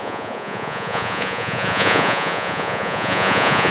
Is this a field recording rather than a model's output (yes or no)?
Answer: no